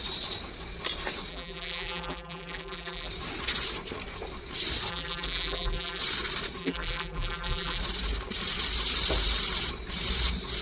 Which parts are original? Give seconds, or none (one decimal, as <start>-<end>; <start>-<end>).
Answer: 0.0-1.3; 3.1-4.9; 6.0-6.6; 7.8-10.6